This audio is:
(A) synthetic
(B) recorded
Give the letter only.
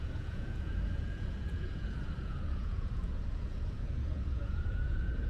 A